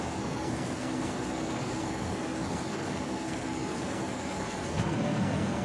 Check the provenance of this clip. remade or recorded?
remade